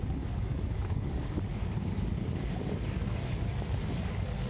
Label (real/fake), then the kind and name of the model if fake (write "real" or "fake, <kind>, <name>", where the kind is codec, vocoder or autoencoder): fake, codec, DAC